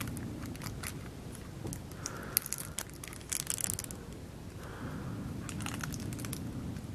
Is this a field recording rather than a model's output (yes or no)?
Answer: yes